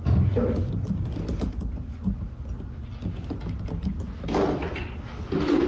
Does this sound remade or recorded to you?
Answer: recorded